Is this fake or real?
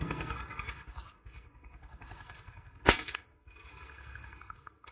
fake